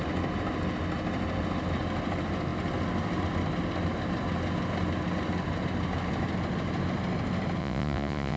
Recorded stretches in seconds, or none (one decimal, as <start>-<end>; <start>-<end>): 0.0-7.6